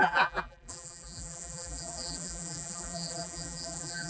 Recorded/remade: remade